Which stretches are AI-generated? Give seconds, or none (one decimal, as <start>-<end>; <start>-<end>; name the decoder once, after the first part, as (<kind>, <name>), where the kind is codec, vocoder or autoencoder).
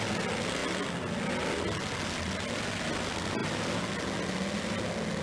none